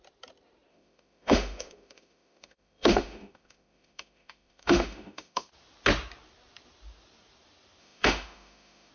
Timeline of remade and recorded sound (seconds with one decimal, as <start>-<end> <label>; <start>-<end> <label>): 0.0-0.7 recorded; 0.7-5.5 remade; 5.5-7.8 recorded; 7.8-8.9 remade